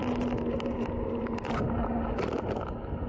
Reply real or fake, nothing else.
real